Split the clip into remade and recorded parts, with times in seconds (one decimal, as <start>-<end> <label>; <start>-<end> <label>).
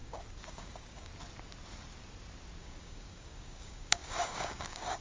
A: 0.0-1.1 remade; 1.1-2.6 recorded; 2.6-5.0 remade